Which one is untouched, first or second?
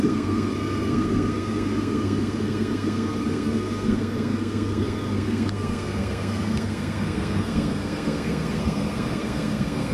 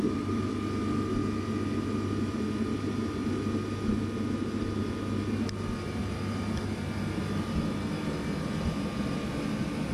second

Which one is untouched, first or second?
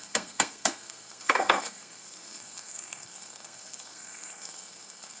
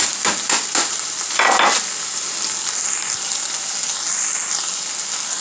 second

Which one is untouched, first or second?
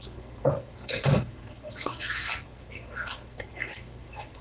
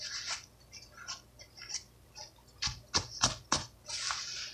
second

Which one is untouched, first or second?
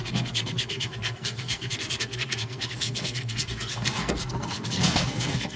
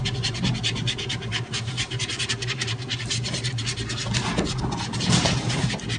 second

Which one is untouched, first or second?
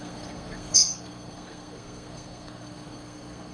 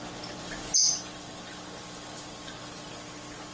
second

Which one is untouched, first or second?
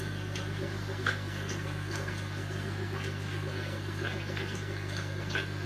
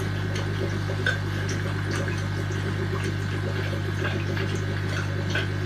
second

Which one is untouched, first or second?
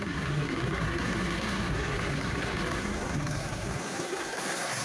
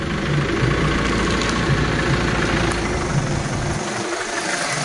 second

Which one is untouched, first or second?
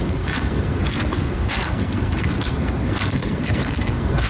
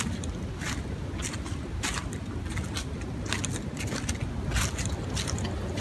second